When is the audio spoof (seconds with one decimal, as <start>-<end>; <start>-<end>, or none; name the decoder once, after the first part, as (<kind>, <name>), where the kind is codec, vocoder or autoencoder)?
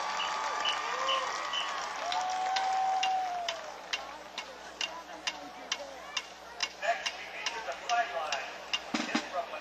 none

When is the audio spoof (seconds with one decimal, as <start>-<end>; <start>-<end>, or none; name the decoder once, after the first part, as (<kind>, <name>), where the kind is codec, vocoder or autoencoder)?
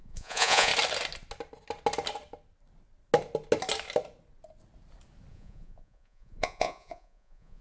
0.0-0.7 (vocoder, Vocos); 5.3-7.6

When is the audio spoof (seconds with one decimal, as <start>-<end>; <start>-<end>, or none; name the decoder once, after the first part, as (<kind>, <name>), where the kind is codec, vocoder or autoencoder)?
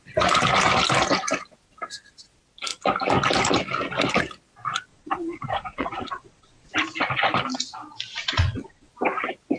4.9-6.7 (vocoder, Vocos); 8.2-8.9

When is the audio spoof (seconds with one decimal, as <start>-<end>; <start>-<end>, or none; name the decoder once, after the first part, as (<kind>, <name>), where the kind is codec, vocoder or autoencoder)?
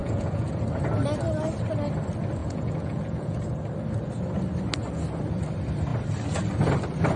0.0-0.6 (vocoder, Vocos); 2.4-3.4